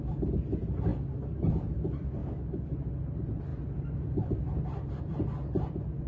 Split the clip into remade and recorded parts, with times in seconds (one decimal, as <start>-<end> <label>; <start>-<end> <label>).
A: 0.0-2.2 recorded; 2.2-2.9 remade; 2.9-6.1 recorded